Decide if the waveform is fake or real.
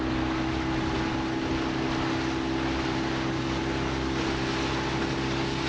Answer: real